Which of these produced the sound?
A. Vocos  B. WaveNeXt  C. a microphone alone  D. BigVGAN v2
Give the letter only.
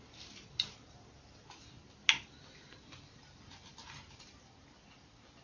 C